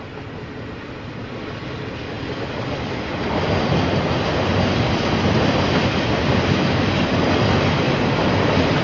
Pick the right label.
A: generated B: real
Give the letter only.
B